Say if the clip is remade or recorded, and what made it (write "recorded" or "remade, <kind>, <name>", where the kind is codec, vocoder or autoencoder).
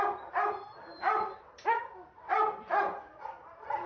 remade, vocoder, BigVGAN v2